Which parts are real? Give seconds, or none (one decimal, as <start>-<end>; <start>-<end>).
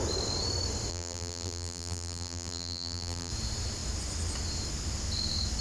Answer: 0.0-0.9; 3.3-5.6